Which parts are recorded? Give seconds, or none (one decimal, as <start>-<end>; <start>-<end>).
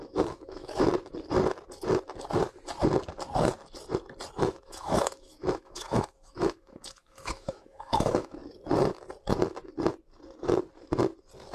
0.9-4.4; 8.4-11.5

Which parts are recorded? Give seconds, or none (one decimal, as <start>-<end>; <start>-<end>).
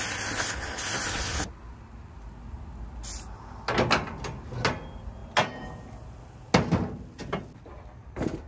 0.0-8.5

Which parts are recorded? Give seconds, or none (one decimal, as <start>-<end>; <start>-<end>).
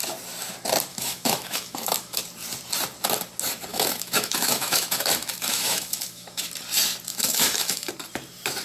0.0-0.9; 2.2-3.7; 6.5-7.1; 7.9-8.6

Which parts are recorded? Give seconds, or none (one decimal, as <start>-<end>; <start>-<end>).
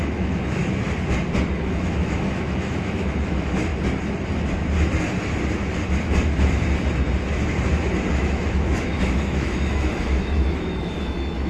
0.6-1.6; 3.7-8.1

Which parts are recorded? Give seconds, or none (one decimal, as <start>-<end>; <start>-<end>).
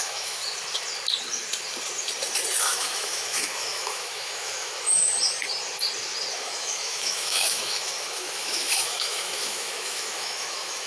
0.4-2.6; 5.1-6.3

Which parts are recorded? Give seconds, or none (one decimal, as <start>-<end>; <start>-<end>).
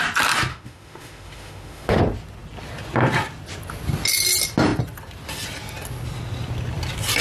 0.0-0.5; 2.0-7.2